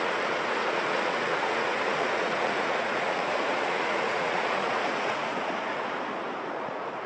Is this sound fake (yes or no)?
yes